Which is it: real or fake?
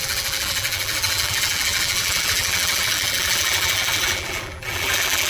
fake